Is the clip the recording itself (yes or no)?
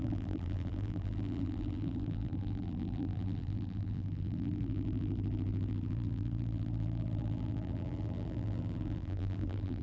no